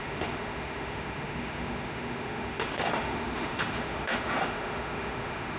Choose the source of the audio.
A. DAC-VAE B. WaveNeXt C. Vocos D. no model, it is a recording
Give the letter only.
A